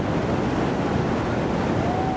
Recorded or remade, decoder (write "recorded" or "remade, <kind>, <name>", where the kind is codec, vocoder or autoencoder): recorded